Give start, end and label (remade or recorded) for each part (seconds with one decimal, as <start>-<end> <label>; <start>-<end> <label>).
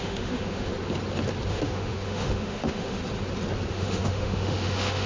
0.0-0.7 remade; 0.7-1.5 recorded; 1.5-3.0 remade; 3.0-3.7 recorded; 3.7-5.1 remade